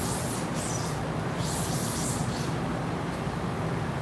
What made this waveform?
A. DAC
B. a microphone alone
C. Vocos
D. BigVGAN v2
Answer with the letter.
B